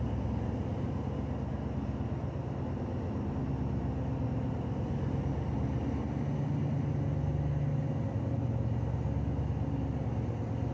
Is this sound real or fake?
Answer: real